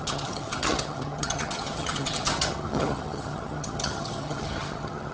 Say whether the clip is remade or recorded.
remade